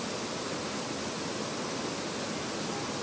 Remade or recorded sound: recorded